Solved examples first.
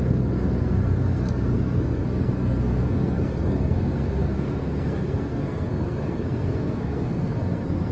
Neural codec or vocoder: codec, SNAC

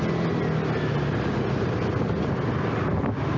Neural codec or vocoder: none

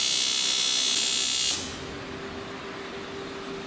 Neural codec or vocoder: none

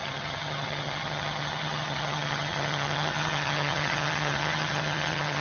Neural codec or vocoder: vocoder, HiFi-GAN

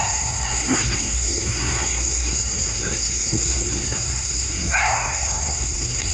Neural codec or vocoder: codec, SNAC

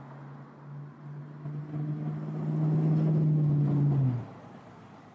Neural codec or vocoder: none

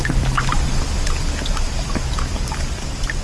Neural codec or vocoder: none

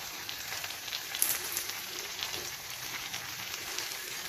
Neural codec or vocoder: vocoder, BigVGAN v2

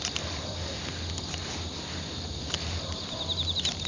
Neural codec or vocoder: vocoder, BigVGAN v2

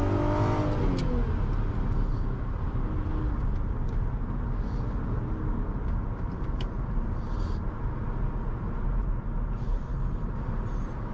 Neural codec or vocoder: none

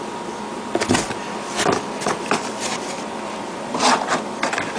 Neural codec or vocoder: none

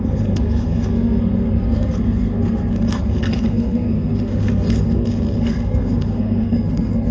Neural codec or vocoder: codec, SNAC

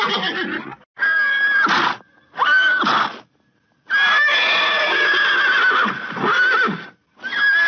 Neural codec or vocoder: none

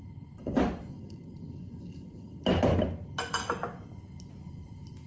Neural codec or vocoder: none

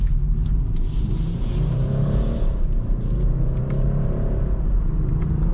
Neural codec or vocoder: vocoder, BigVGAN v2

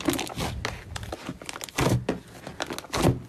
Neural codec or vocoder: none